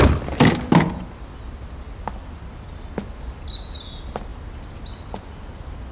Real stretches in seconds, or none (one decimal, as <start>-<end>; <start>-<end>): 0.0-5.9